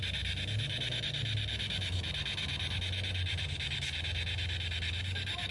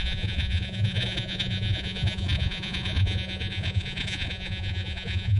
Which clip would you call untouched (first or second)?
first